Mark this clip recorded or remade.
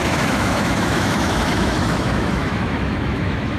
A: remade